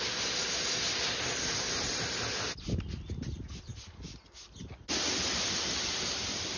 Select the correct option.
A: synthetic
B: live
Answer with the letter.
B